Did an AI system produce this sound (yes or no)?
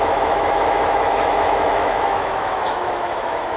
yes